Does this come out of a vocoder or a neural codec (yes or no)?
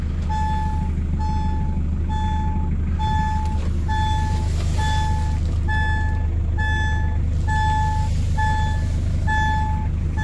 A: no